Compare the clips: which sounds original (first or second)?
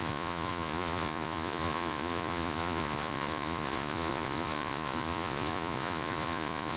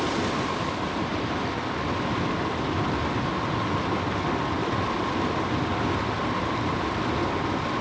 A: second